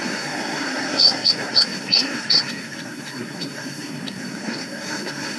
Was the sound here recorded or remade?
remade